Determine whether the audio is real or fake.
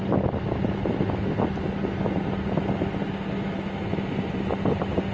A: real